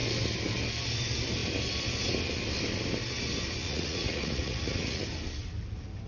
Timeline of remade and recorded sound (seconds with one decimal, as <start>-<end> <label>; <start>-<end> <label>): 0.0-3.6 recorded; 3.6-5.0 remade; 5.0-6.1 recorded